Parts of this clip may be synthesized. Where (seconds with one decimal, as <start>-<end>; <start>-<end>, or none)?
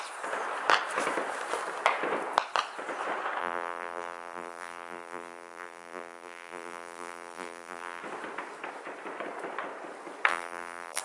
3.4-8.0; 10.3-11.0